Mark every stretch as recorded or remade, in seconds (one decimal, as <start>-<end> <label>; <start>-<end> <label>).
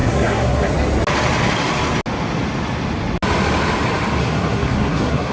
0.0-0.7 remade; 0.7-4.2 recorded; 4.2-5.3 remade